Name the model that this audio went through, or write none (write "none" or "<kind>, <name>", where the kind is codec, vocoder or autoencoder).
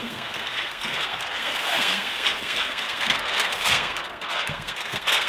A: codec, SNAC